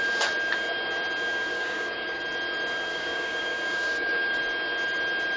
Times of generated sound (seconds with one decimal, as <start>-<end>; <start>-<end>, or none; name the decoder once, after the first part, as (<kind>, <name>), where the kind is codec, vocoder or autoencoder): 1.5-2.2 (codec, DAC); 2.9-4.4